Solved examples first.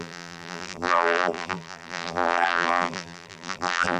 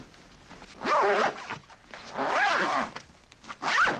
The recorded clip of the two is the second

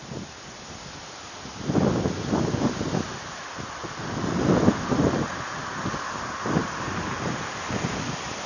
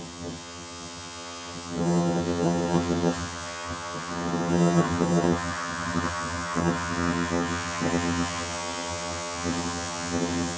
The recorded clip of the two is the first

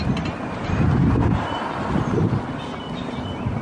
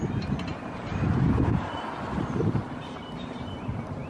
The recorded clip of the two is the first